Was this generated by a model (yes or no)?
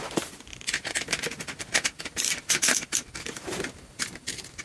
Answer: no